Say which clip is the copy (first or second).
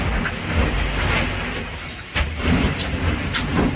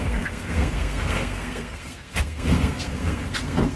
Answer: second